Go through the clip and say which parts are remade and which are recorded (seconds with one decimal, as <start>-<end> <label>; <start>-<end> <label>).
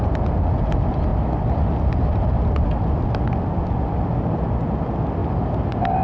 0.0-6.0 recorded